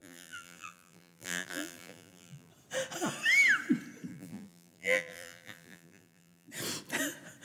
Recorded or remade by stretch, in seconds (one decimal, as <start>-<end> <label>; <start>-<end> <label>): 0.0-2.5 remade; 2.5-4.1 recorded; 4.1-6.5 remade; 6.5-7.4 recorded